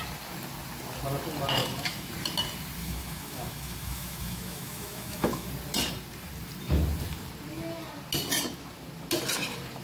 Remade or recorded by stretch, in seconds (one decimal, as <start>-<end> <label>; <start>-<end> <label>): 0.0-1.6 recorded; 1.6-2.1 remade; 2.1-2.8 recorded; 2.8-5.5 remade; 5.5-9.8 recorded